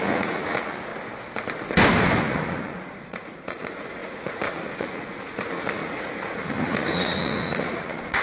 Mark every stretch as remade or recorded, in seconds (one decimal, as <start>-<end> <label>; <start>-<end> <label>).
0.0-0.9 remade; 0.9-2.2 recorded; 2.2-8.2 remade